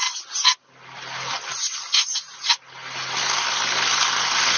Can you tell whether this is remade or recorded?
recorded